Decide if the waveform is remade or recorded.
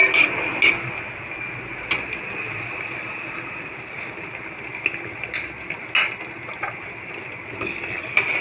recorded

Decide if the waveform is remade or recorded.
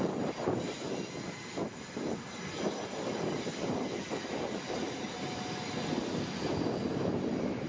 recorded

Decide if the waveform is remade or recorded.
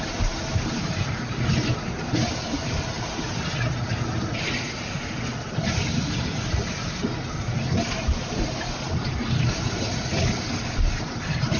recorded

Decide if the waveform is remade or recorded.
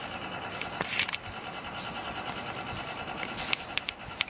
recorded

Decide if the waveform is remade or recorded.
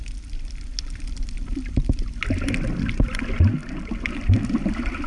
recorded